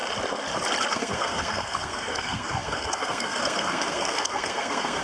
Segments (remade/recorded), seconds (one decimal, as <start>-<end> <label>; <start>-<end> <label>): 0.0-0.9 recorded; 0.9-5.0 remade